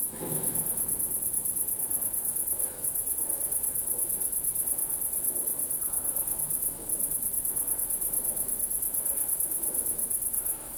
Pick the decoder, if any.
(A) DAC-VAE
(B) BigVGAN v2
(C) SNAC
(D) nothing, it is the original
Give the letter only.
A